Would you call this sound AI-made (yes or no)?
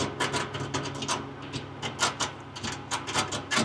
no